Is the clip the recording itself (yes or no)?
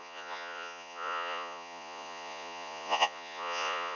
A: no